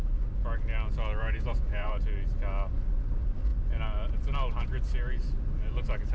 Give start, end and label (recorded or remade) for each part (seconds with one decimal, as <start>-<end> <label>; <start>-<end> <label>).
0.0-1.2 recorded; 1.2-2.0 remade; 2.0-6.1 recorded